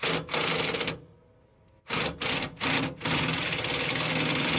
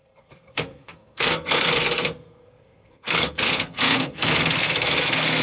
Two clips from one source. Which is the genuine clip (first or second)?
first